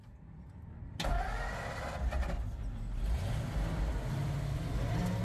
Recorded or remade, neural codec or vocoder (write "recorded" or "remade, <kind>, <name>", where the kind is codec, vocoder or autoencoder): recorded